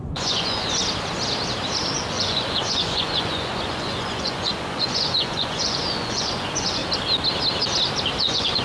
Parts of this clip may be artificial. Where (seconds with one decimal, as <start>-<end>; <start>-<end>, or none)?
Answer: 0.0-0.8; 2.1-6.8; 8.2-8.6